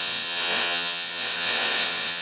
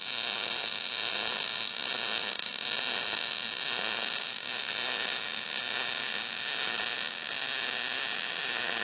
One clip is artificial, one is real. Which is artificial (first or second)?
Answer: first